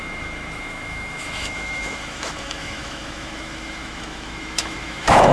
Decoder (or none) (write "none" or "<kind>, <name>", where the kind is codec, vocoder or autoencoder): autoencoder, DAC-VAE